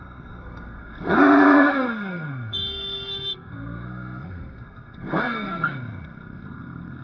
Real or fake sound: fake